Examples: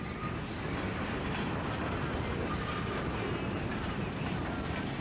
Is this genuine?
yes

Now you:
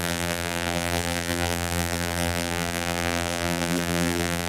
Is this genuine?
no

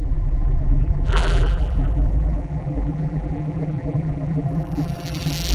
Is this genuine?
no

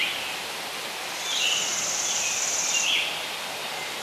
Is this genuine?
yes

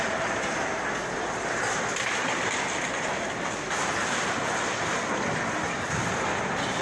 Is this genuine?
yes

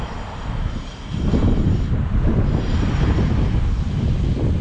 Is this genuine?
no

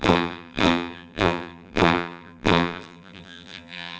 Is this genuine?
no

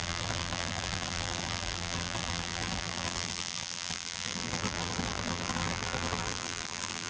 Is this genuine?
no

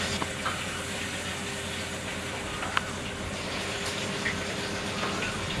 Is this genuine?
yes